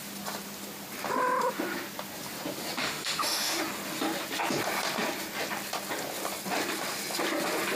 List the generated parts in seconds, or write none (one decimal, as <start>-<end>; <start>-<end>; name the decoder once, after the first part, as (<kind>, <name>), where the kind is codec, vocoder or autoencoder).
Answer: 2.8-3.6 (autoencoder, DAC-VAE)